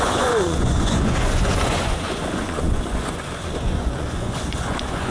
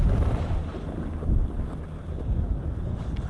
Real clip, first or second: second